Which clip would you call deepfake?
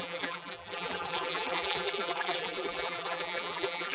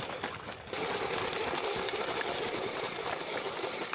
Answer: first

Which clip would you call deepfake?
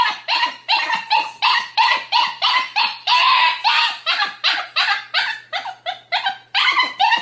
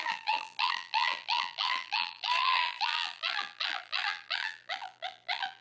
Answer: second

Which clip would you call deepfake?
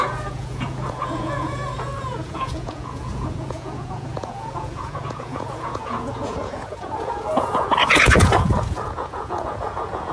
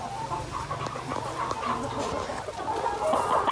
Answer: first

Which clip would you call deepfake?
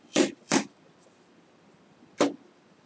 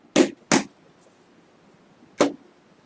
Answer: first